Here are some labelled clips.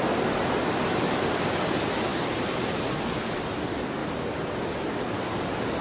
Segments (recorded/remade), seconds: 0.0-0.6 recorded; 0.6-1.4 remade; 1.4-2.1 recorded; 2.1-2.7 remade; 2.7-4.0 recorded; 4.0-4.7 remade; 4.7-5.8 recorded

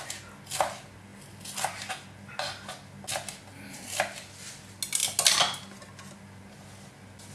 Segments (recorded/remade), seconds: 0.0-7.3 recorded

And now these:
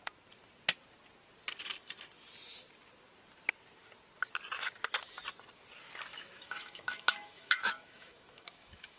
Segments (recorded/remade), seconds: 0.0-6.1 recorded; 6.1-9.0 remade